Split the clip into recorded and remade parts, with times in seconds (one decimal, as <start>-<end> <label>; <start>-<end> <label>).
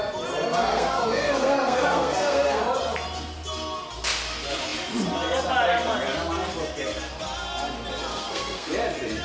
0.0-0.7 recorded; 0.7-2.6 remade; 2.6-8.1 recorded; 8.1-8.7 remade; 8.7-9.2 recorded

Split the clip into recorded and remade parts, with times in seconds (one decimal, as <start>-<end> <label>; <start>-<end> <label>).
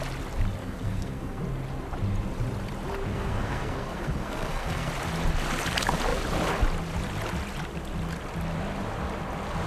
0.0-0.6 recorded; 0.6-1.4 remade; 1.4-3.1 recorded; 3.1-4.9 remade; 4.9-9.7 recorded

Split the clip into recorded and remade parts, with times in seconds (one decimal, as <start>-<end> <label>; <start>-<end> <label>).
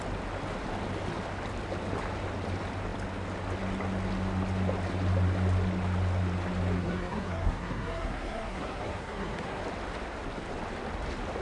0.0-6.8 recorded; 6.8-9.6 remade; 9.6-11.4 recorded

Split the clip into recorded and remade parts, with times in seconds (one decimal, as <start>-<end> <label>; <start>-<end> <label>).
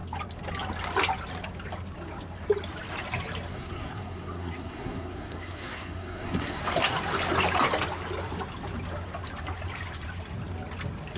0.0-3.5 recorded; 3.5-6.6 remade; 6.6-11.2 recorded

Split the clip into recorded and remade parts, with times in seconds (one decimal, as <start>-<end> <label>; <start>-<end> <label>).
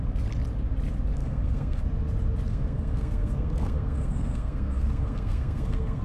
0.0-1.2 recorded; 1.2-1.8 remade; 1.8-2.5 recorded; 2.5-6.0 remade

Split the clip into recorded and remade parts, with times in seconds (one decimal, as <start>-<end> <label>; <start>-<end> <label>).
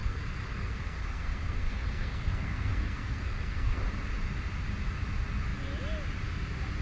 0.0-3.8 remade; 3.8-6.8 recorded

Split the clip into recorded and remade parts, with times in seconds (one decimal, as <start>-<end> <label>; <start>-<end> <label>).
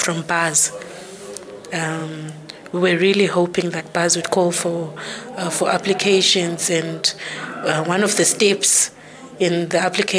0.0-10.2 recorded